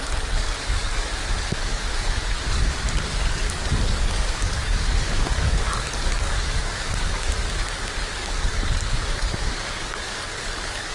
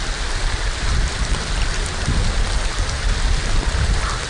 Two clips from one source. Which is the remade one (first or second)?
first